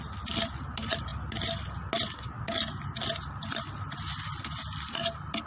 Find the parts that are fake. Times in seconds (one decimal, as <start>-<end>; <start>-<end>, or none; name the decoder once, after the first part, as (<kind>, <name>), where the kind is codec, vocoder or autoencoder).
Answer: none